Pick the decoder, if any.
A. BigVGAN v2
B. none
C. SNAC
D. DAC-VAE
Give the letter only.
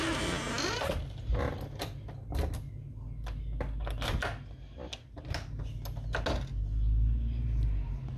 B